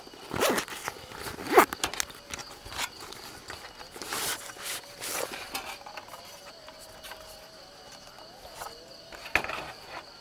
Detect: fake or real real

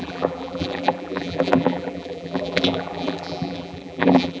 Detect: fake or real fake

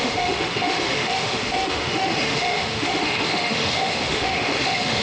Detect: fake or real fake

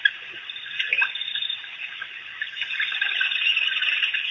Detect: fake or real real